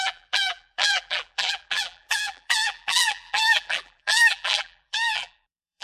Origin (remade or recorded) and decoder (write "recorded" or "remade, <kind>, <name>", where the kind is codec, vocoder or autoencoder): remade, vocoder, BigVGAN v2